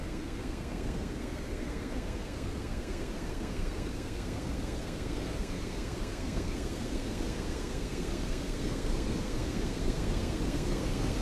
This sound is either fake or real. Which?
fake